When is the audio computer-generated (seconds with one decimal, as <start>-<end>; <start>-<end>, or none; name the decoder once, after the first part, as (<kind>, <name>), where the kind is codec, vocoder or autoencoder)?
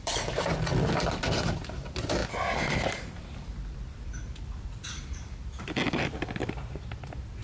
0.0-2.2 (vocoder, BigVGAN v2); 3.0-7.4